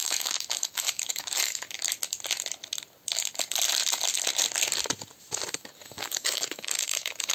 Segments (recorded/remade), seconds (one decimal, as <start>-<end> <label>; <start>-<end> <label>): 0.0-1.8 remade; 1.8-5.6 recorded; 5.6-7.3 remade